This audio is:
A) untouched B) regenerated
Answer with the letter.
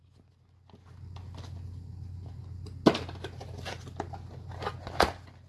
A